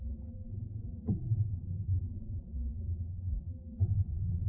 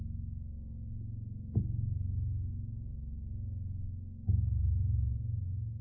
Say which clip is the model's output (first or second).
first